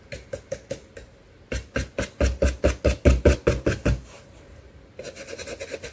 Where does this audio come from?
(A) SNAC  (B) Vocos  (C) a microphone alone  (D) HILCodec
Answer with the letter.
C